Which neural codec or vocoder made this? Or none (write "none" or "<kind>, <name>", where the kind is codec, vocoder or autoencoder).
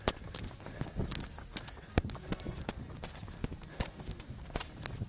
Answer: none